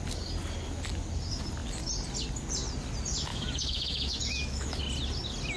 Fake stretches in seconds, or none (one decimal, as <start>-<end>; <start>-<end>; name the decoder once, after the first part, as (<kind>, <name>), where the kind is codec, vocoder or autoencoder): 3.3-4.8 (autoencoder, DAC-VAE)